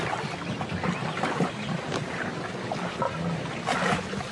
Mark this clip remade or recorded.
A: recorded